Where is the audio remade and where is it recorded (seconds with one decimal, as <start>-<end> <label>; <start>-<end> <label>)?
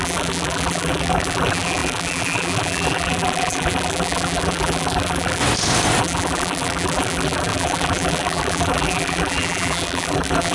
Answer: 0.0-5.4 remade; 5.4-6.0 recorded; 6.0-10.5 remade